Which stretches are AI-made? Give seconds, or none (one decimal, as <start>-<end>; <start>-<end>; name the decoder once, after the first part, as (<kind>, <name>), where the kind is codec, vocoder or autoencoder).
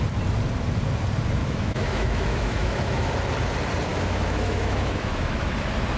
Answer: 1.4-3.1 (autoencoder, DAC-VAE); 3.9-5.5